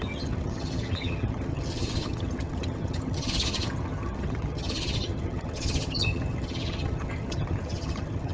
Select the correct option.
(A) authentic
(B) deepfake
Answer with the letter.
B